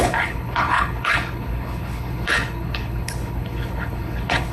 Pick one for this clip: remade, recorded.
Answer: remade